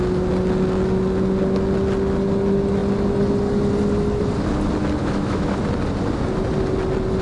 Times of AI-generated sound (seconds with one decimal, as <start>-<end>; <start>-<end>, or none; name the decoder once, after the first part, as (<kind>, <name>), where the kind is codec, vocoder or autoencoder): 5.0-5.6 (autoencoder, DAC-VAE)